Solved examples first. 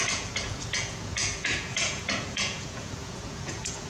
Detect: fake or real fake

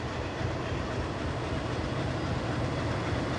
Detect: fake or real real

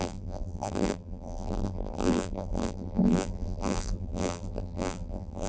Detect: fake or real fake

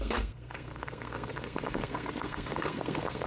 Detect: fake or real fake